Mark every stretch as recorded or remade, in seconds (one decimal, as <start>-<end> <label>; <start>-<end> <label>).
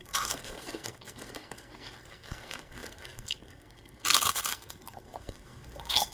0.0-6.1 remade